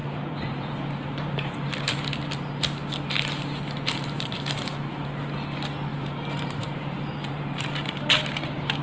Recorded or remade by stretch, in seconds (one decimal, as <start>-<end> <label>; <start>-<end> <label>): 0.0-1.5 remade; 1.5-5.9 recorded; 5.9-8.8 remade